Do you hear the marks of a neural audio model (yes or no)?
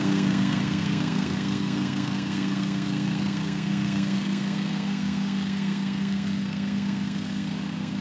yes